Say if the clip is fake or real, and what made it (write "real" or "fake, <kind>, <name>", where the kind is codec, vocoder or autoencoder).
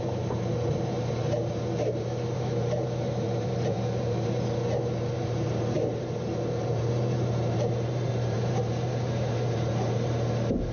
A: fake, vocoder, BigVGAN v2